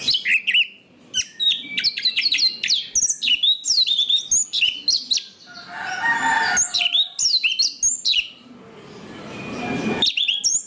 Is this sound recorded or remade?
recorded